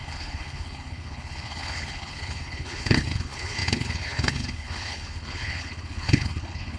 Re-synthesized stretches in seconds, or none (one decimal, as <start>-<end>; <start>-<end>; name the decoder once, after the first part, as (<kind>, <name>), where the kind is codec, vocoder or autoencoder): 0.0-6.8 (codec, HILCodec)